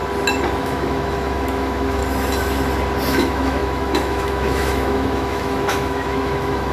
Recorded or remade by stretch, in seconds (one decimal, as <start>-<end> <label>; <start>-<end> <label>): 0.0-0.6 recorded; 0.6-2.0 remade; 2.0-3.1 recorded; 3.1-6.7 remade